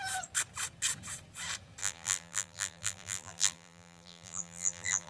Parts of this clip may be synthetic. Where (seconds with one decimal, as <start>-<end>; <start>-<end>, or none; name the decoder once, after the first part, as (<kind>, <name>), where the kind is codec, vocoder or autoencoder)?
1.8-5.1 (vocoder, BigVGAN v2)